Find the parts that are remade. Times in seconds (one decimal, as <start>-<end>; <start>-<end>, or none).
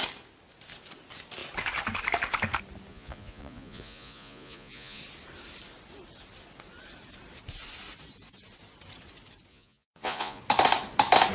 2.9-5.0; 9.5-10.4